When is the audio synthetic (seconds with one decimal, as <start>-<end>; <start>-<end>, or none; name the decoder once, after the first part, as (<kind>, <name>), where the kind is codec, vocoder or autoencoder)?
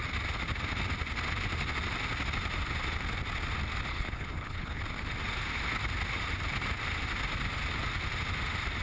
3.9-4.8 (codec, HILCodec)